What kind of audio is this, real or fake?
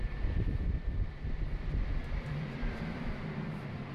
fake